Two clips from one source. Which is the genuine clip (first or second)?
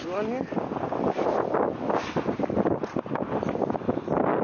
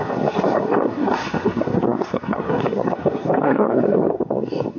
first